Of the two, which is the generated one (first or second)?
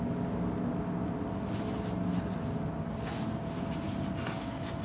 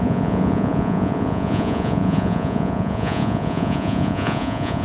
second